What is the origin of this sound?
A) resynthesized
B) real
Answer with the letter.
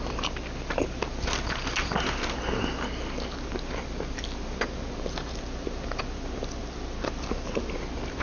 B